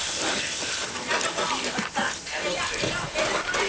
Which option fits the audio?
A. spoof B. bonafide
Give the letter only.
B